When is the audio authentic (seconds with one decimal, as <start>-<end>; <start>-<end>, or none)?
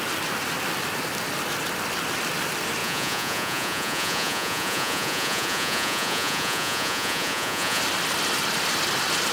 0.0-2.8; 7.8-9.3